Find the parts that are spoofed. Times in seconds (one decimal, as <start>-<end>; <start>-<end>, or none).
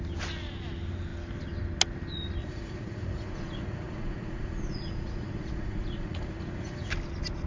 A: 2.4-6.9